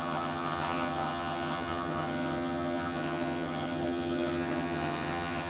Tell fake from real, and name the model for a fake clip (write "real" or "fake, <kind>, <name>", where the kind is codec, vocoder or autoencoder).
fake, vocoder, HiFi-GAN